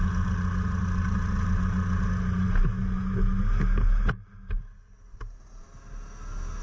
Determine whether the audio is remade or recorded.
recorded